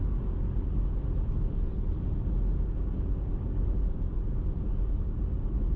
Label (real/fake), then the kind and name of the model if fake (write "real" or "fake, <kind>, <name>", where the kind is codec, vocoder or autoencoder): real